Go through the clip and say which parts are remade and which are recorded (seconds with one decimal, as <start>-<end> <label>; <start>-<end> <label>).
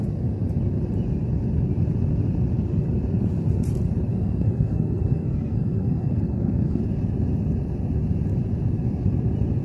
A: 0.0-4.1 recorded; 4.1-6.8 remade; 6.8-9.6 recorded